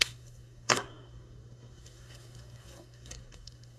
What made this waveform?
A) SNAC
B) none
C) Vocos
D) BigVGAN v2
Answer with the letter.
A